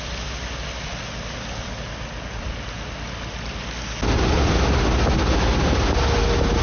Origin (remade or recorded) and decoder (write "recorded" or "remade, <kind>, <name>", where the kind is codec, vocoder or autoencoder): recorded